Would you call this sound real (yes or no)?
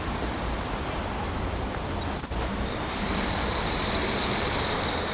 no